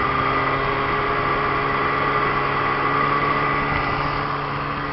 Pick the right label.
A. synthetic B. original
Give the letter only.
B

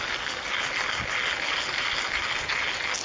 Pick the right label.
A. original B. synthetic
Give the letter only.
A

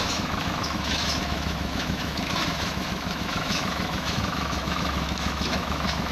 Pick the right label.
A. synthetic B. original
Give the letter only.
A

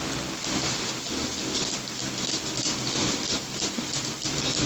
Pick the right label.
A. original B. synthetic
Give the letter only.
A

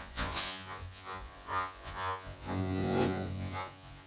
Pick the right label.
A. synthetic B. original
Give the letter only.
A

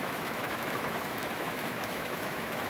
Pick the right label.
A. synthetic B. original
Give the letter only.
A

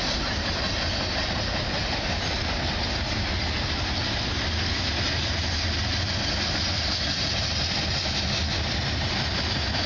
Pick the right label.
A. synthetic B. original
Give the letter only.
B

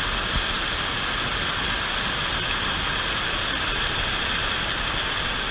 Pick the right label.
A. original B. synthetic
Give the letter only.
A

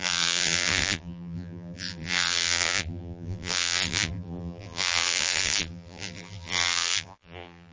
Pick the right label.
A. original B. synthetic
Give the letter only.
B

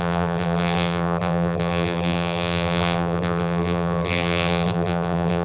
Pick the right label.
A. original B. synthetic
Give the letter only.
B